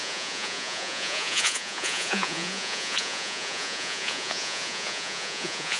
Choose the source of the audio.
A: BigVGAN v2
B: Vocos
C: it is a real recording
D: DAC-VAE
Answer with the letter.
B